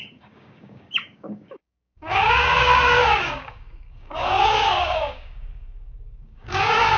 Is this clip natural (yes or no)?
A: no